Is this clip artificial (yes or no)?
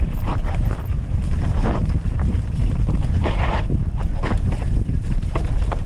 yes